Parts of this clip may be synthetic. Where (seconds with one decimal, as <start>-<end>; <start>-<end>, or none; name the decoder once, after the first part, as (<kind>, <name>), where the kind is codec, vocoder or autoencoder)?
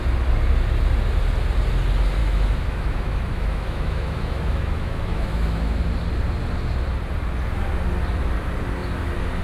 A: 2.2-5.8 (autoencoder, DAC-VAE)